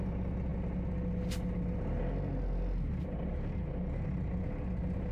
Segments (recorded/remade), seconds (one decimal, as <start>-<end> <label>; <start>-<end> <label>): 0.0-5.1 recorded